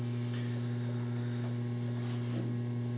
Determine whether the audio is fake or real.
real